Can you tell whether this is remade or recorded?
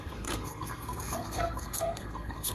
remade